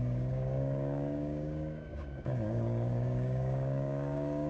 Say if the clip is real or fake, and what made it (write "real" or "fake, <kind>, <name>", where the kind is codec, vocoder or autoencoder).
fake, codec, DAC